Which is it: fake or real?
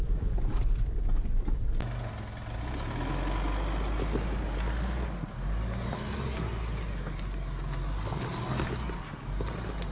real